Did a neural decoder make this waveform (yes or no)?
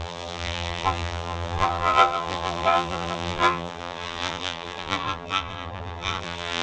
yes